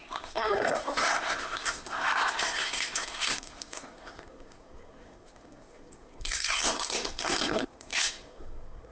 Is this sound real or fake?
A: fake